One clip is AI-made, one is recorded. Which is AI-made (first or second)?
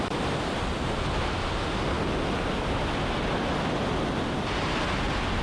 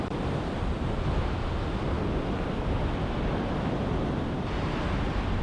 second